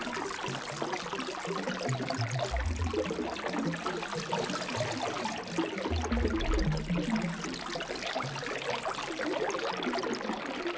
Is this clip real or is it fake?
real